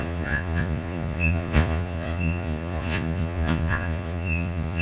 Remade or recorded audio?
remade